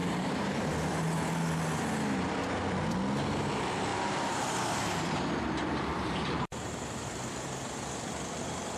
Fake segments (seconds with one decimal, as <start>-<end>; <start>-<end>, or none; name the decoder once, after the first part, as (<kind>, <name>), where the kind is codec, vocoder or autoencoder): 0.0-0.7 (vocoder, BigVGAN v2); 3.9-7.8